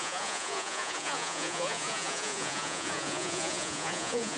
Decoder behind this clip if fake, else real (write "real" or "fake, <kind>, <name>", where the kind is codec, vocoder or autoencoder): fake, vocoder, Vocos